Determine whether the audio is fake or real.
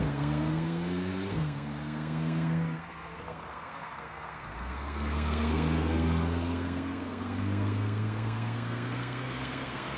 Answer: fake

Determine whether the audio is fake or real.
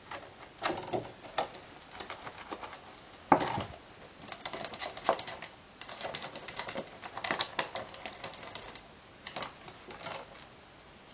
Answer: real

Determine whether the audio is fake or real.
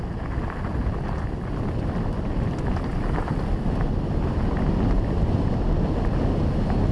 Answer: real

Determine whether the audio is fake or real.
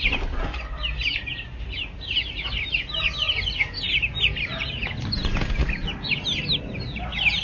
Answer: real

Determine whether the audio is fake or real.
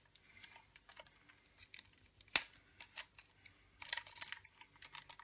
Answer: real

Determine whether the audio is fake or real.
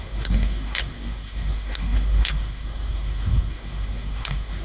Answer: fake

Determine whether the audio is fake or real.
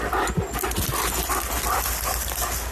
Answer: real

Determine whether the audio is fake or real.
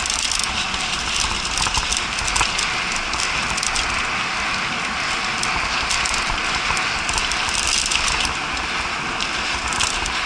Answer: real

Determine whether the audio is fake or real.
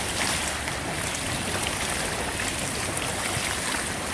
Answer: real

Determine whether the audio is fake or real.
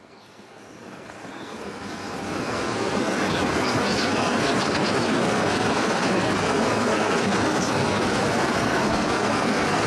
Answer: fake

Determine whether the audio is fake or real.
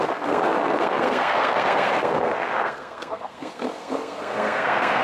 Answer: fake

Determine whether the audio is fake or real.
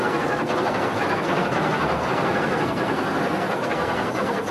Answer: fake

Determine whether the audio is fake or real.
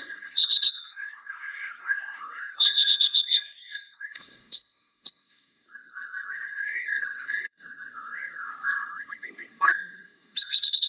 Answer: fake